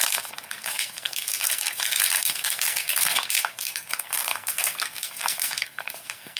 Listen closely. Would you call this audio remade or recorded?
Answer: remade